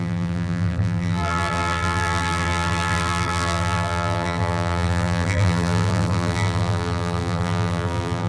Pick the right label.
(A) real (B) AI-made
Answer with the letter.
B